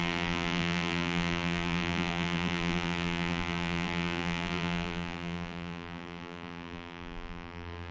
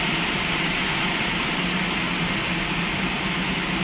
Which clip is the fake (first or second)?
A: first